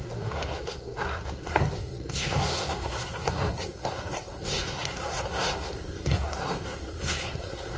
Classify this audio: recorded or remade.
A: remade